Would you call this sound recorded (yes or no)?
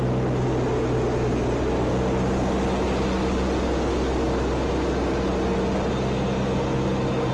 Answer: yes